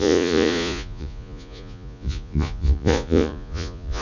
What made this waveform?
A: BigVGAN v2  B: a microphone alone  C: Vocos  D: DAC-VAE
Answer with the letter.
C